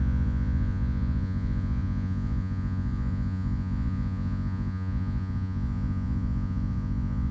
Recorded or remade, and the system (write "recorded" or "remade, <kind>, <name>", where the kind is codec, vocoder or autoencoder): remade, vocoder, Vocos